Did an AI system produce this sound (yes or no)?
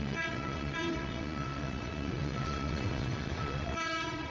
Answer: yes